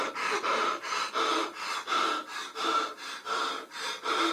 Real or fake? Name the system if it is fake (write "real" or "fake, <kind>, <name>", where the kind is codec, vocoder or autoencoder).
fake, vocoder, BigVGAN v2